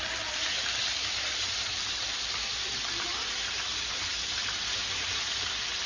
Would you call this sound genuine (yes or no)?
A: no